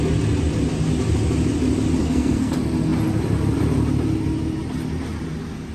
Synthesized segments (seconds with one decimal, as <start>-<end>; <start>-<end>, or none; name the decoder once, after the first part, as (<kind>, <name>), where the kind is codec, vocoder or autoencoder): 2.0-2.5 (codec, SNAC)